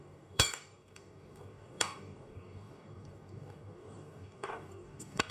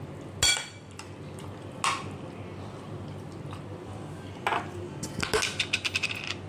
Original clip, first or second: second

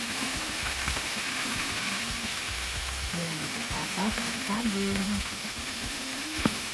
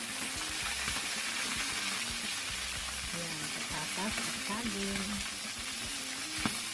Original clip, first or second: second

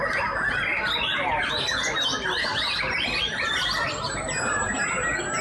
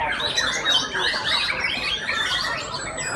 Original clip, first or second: first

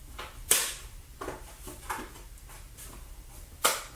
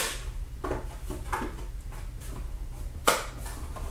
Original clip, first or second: second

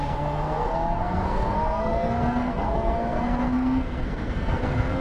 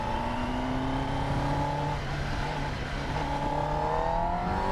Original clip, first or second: second